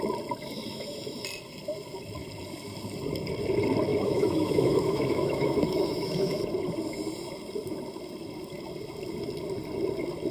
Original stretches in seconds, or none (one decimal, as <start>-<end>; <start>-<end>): 0.0-0.7; 1.2-3.9; 6.4-10.3